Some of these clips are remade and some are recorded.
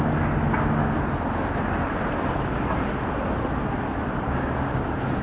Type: recorded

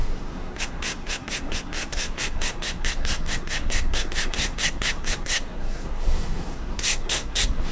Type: remade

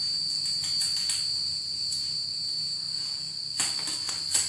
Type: recorded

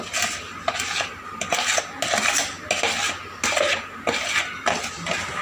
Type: recorded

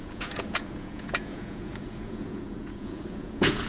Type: remade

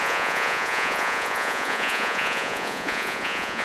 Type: remade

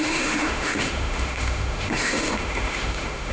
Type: remade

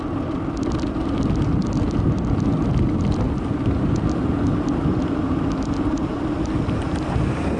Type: recorded